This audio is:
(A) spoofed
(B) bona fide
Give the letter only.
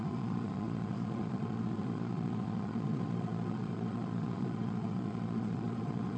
A